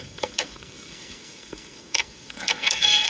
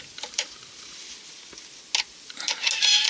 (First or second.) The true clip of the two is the second